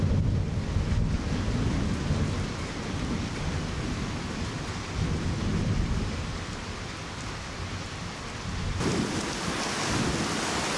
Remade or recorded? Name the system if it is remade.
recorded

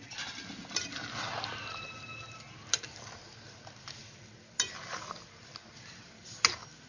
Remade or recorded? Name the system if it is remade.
recorded